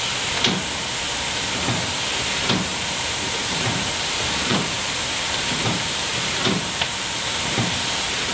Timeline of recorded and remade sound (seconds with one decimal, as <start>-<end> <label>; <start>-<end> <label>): 0.0-2.7 recorded; 2.7-7.7 remade; 7.7-8.3 recorded